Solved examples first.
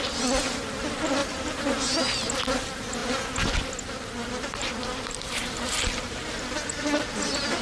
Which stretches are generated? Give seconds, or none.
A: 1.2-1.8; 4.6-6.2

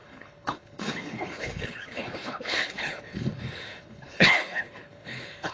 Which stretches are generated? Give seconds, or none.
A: 0.0-5.5

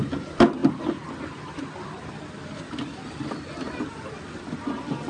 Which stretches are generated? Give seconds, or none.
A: none

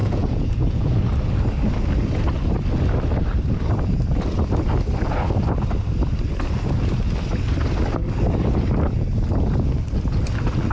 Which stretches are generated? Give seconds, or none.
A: 0.0-0.9

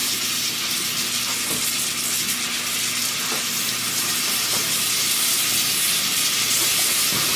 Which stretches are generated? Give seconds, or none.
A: 0.0-0.5; 3.0-4.1; 4.5-7.4

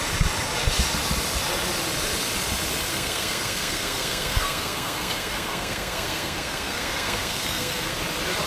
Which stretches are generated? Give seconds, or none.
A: 2.9-8.0